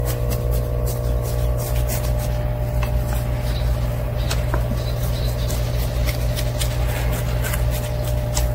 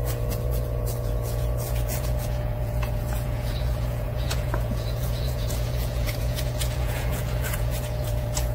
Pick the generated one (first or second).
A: second